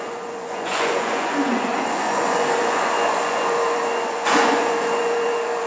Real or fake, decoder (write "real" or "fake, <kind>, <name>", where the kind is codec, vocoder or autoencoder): fake, vocoder, Vocos